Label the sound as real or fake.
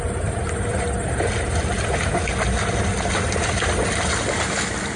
real